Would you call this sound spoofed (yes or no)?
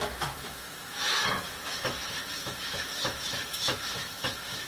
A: yes